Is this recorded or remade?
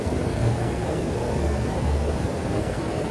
remade